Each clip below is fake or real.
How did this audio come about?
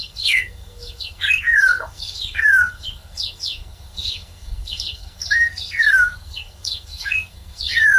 fake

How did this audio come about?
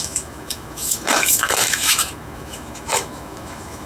fake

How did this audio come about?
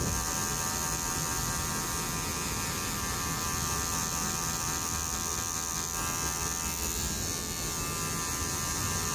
real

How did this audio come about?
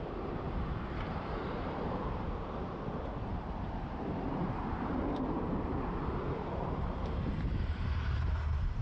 fake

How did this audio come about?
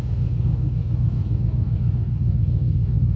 fake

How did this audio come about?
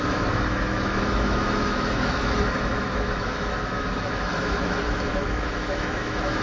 fake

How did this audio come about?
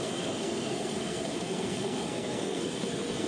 fake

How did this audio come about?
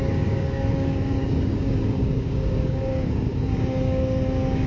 fake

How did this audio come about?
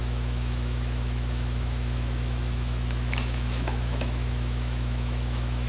fake